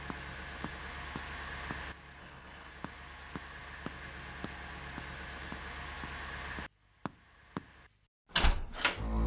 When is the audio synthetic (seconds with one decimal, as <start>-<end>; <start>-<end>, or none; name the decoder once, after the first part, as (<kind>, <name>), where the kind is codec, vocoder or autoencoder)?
2.2-2.7 (codec, HILCodec)